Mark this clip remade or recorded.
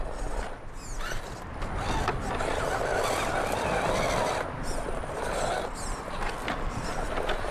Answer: recorded